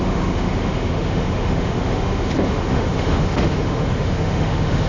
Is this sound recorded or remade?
remade